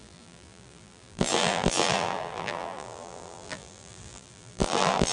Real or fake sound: fake